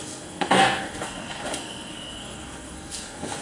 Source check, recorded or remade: remade